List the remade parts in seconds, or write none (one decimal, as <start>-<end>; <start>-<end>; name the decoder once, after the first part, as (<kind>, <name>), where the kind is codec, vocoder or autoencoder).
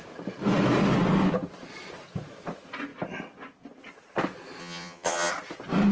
4.6-5.3 (vocoder, HiFi-GAN)